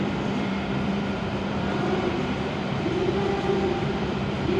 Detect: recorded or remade remade